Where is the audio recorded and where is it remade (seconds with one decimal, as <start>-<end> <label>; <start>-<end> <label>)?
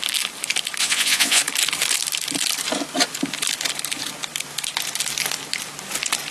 0.0-0.8 recorded; 0.8-1.4 remade; 1.4-6.3 recorded